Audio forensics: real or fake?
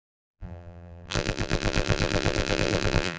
fake